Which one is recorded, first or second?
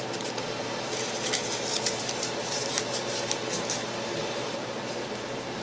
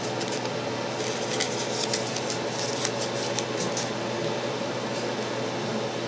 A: second